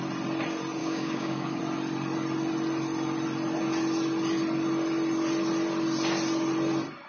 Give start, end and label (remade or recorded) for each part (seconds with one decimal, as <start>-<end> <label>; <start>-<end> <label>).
0.0-0.8 recorded; 0.8-1.6 remade; 1.6-7.1 recorded